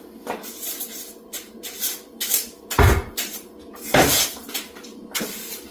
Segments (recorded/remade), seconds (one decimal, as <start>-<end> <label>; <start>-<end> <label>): 0.0-0.7 recorded; 0.7-4.1 remade; 4.1-5.7 recorded